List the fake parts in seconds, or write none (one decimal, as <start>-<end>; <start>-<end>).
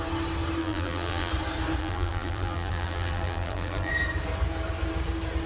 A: 0.6-1.3; 1.8-3.9